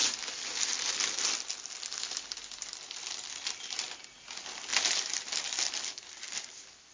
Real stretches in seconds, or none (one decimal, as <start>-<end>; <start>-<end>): 0.0-6.9